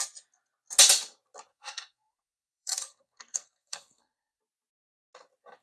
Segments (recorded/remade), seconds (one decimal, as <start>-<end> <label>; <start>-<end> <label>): 0.0-1.5 recorded; 1.5-4.4 remade; 4.4-5.6 recorded